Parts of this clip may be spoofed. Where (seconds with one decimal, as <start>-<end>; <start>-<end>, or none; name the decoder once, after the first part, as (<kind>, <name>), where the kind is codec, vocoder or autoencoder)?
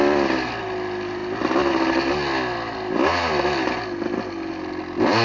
none